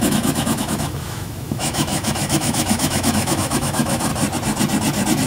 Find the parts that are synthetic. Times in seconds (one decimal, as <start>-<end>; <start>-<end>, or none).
0.0-4.1